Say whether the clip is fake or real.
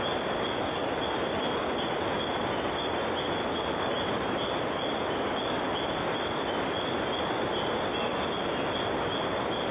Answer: real